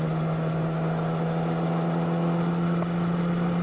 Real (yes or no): yes